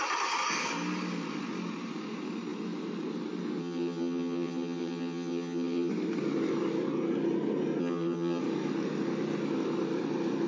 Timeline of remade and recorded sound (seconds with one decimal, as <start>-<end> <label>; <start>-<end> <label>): 0.0-3.6 recorded; 3.6-5.9 remade; 5.9-7.8 recorded; 7.8-8.4 remade; 8.4-10.5 recorded